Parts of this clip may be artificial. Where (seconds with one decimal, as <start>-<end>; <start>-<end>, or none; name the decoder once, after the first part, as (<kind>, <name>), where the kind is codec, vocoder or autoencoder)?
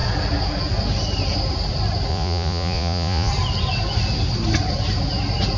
2.1-3.3 (vocoder, Vocos)